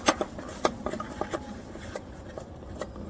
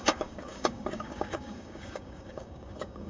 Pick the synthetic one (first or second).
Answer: second